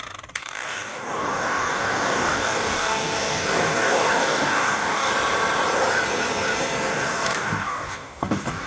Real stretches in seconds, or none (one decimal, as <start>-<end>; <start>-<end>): 0.0-0.4; 5.1-6.9